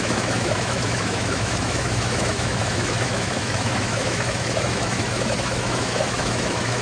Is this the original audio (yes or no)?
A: no